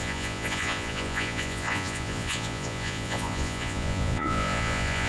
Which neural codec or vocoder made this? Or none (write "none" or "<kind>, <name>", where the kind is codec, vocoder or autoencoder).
vocoder, Vocos